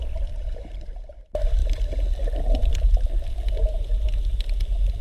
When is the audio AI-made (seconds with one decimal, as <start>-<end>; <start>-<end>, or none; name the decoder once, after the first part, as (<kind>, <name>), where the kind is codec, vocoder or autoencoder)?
none